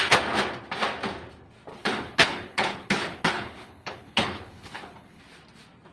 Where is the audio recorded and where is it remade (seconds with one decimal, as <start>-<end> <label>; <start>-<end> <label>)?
0.0-1.7 recorded; 1.7-5.2 remade; 5.2-5.9 recorded